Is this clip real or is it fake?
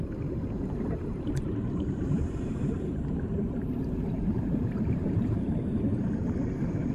fake